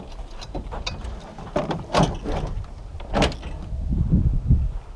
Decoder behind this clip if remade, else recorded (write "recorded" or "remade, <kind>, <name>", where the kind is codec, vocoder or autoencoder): recorded